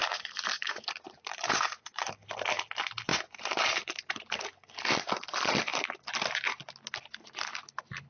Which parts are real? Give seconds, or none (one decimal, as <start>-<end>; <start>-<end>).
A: 2.1-3.1; 4.4-8.1